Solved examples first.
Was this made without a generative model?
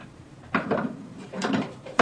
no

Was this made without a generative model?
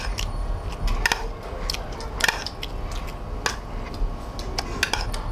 yes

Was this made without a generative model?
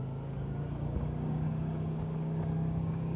no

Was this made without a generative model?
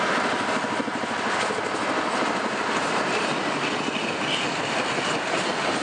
yes